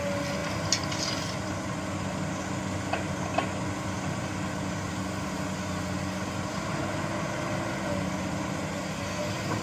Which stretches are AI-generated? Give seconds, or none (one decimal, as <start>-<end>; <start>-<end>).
none